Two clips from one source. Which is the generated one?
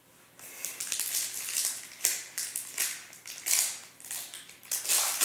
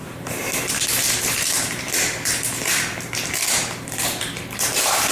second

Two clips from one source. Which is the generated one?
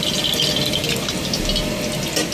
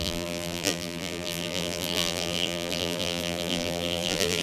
second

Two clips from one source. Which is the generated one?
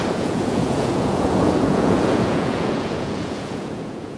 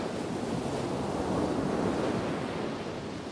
first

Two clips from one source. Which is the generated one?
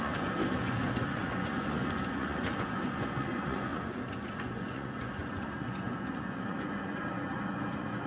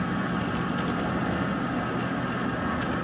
first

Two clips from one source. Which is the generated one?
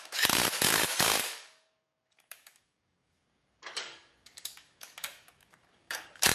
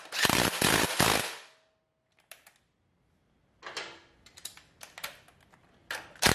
first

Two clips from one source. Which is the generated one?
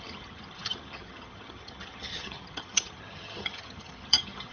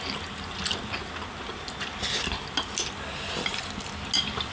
first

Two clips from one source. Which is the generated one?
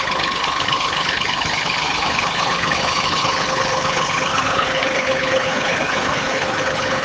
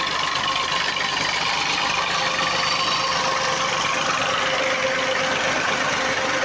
first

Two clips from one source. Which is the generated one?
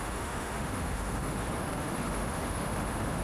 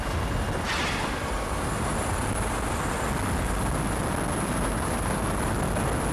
first